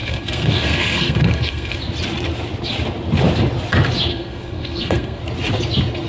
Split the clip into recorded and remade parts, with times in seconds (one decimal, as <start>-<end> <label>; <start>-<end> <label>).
0.0-1.8 remade; 1.8-4.1 recorded; 4.1-5.2 remade; 5.2-6.1 recorded